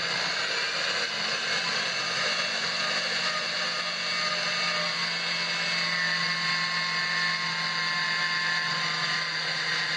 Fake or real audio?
real